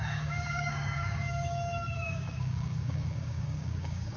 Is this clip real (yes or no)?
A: no